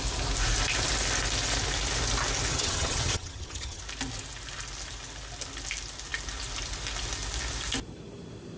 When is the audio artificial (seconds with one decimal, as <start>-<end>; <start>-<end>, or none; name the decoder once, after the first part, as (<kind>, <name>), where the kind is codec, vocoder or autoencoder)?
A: 2.5-3.8 (vocoder, HiFi-GAN)